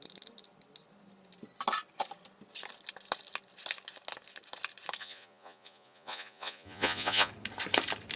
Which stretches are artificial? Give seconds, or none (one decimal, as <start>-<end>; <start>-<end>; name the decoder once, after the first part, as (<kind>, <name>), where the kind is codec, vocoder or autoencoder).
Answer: 5.0-7.3 (vocoder, Vocos)